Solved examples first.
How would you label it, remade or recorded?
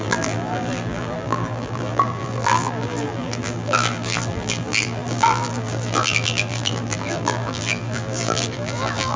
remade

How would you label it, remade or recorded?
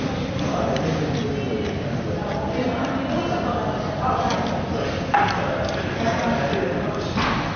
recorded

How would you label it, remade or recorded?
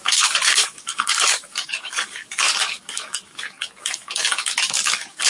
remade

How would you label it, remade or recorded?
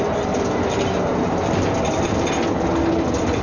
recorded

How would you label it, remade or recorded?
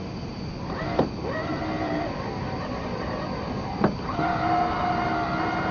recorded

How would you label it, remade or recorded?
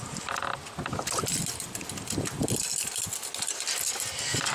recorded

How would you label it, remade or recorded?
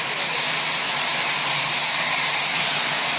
recorded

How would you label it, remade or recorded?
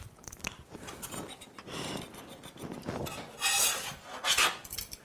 recorded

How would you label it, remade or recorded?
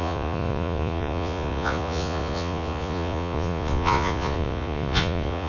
remade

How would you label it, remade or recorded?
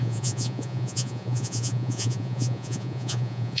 remade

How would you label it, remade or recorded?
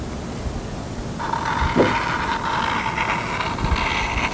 recorded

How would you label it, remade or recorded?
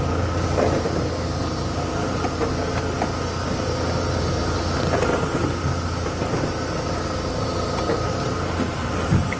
recorded